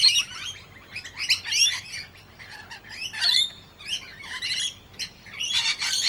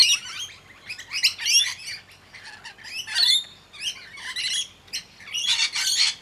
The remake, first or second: first